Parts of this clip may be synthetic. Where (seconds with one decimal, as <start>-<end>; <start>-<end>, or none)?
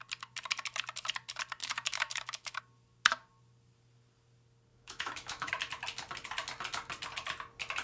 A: 1.6-2.6; 4.7-5.5